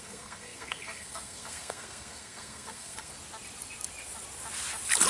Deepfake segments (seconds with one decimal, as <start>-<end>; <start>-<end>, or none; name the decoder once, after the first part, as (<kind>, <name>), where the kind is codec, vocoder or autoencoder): 0.0-3.1 (codec, SNAC)